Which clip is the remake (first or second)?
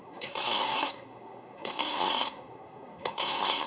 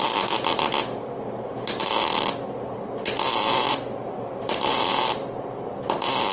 first